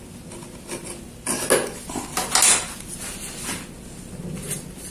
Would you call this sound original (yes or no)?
yes